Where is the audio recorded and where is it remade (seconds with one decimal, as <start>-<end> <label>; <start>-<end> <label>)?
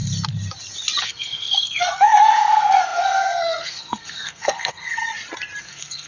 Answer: 0.0-1.0 recorded; 1.0-5.0 remade; 5.0-5.6 recorded; 5.6-6.1 remade